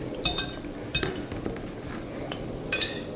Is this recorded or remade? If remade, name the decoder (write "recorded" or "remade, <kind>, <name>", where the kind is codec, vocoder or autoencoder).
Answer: recorded